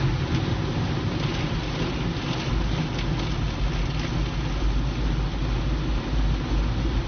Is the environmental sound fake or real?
real